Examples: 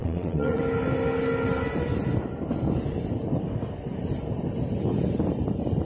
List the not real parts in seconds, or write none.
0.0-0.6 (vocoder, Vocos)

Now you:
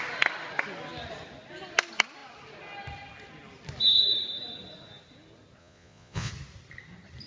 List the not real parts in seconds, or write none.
5.6-6.3 (vocoder, Vocos)

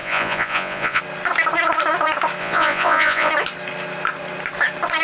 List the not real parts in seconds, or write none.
0.0-1.0 (vocoder, Vocos); 2.4-3.3

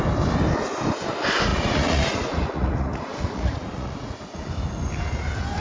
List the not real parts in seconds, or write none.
1.5-4.5 (vocoder, Vocos)

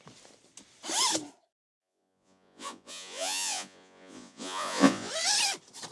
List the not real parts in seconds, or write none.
1.6-5.1 (vocoder, Vocos)

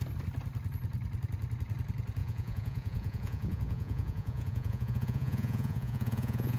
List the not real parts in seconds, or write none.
2.2-6.6 (vocoder, Vocos)

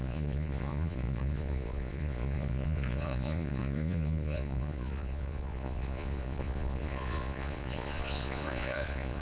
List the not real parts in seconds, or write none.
0.0-9.2 (vocoder, Vocos)